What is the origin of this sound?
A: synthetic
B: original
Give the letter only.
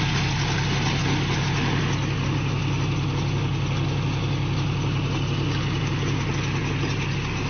B